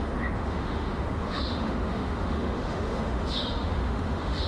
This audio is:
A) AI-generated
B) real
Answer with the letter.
A